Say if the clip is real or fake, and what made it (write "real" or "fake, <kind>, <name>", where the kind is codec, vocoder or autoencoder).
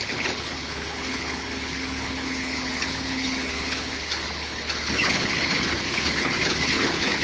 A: fake, codec, HILCodec